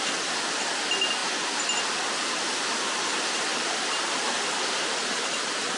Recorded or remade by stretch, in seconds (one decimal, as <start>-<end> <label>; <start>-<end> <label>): 0.0-3.5 recorded; 3.5-5.8 remade